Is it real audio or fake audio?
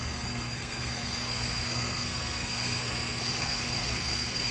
fake